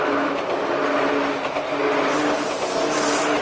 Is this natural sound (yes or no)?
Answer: yes